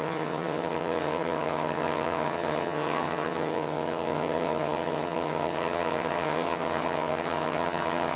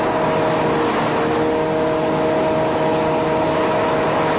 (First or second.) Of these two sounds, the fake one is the first